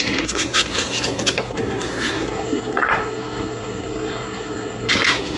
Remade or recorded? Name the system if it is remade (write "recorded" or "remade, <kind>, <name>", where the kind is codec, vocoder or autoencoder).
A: remade, codec, SNAC